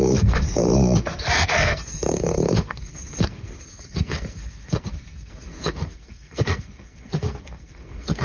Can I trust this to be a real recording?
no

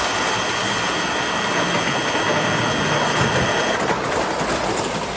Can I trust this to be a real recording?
yes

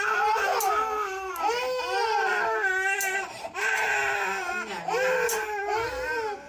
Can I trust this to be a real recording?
yes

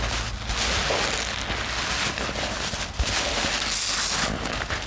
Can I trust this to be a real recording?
yes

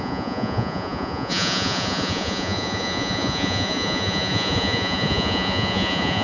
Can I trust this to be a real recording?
no